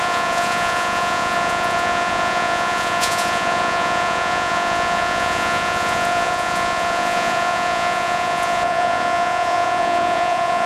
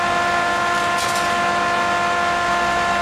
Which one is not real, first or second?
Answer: first